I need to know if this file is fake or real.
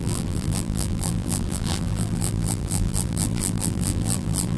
fake